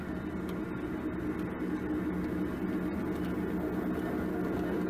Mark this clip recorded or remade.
recorded